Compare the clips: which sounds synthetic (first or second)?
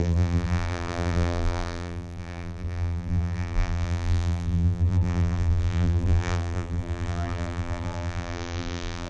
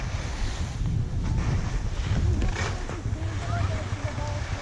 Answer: first